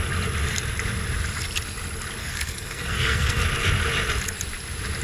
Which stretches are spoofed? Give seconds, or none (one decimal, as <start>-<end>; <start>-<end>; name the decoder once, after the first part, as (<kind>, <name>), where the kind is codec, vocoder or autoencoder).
2.2-3.4 (codec, SNAC)